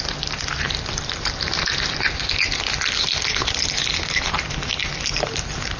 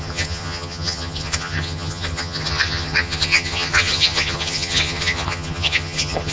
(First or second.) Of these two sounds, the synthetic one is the second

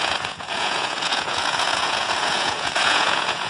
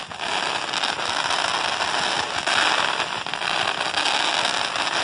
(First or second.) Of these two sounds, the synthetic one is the first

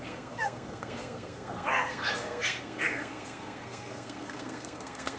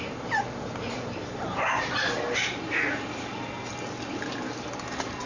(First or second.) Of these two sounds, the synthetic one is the first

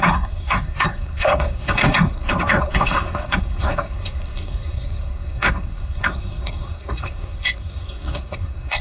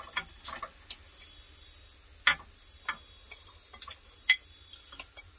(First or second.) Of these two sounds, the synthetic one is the first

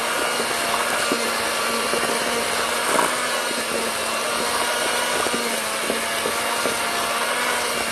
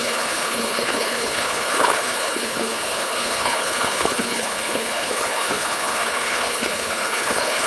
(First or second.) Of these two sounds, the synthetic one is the second